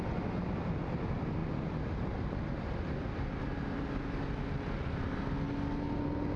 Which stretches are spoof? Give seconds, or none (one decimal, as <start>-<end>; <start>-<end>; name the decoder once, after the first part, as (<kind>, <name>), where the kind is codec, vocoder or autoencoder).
none